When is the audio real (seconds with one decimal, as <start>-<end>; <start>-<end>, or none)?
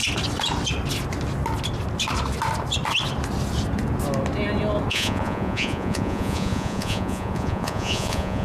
0.0-4.9